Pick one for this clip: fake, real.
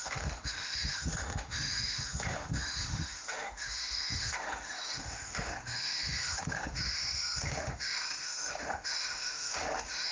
fake